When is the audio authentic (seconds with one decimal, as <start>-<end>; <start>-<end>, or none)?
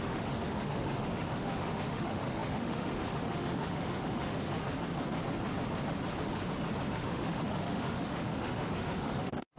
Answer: 4.5-6.9